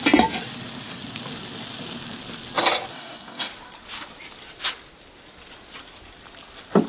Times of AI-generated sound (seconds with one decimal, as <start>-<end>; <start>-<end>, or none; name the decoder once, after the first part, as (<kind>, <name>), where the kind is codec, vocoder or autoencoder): 2.9-3.5 (codec, DAC)

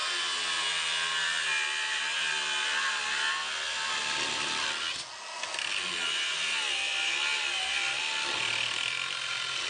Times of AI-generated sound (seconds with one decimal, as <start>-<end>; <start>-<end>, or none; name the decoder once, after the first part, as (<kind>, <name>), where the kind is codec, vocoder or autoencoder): none

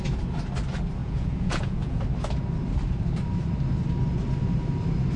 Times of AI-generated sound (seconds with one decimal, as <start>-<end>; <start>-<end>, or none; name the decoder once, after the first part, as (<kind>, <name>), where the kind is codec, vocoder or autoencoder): 1.0-2.0 (vocoder, Vocos)

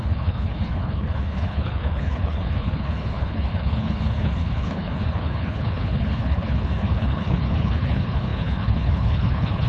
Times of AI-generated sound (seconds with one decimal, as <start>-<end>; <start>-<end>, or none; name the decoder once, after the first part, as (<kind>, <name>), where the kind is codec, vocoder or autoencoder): 0.0-9.7 (codec, HILCodec)

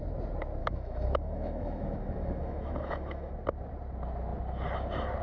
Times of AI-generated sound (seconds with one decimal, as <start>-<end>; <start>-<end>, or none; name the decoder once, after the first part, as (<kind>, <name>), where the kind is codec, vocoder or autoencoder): 0.6-3.3 (autoencoder, DAC-VAE)

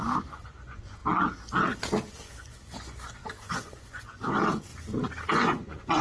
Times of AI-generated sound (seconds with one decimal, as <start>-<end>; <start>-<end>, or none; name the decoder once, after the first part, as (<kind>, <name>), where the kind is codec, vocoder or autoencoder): 0.0-1.0 (vocoder, Vocos); 2.1-4.7; 5.3-6.0

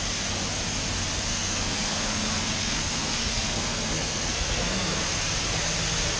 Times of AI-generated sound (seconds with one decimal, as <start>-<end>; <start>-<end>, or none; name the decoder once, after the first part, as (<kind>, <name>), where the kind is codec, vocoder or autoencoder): 1.3-5.0 (codec, SNAC)

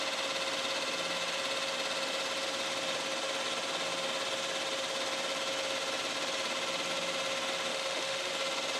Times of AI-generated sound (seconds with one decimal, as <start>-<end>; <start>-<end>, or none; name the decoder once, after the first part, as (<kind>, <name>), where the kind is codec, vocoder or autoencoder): 7.7-8.3 (autoencoder, DAC-VAE)